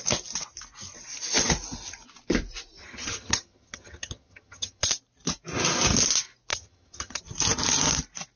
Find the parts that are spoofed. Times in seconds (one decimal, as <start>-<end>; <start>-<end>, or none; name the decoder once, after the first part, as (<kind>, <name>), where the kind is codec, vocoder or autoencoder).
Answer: 2.8-4.9 (vocoder, HiFi-GAN); 6.5-7.2